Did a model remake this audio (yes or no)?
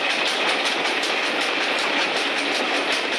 no